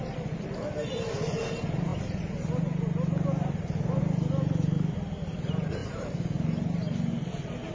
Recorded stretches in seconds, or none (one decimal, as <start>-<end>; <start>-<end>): 0.0-7.7